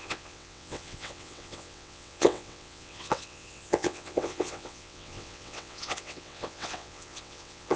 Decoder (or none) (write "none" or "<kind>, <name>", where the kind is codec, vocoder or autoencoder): vocoder, WaveNeXt